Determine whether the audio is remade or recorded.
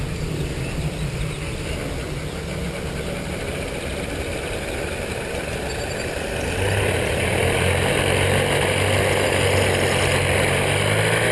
recorded